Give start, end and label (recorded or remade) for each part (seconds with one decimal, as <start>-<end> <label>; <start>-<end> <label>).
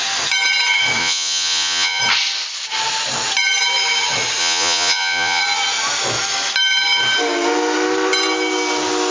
0.0-1.0 recorded; 1.0-2.0 remade; 2.0-4.4 recorded; 4.4-5.4 remade; 5.4-9.1 recorded